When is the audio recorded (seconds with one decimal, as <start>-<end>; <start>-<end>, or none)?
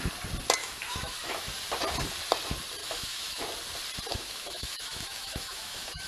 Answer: 0.0-0.6; 1.5-2.8; 3.4-4.1